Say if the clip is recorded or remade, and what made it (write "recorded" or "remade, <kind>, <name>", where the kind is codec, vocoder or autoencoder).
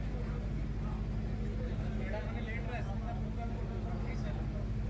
recorded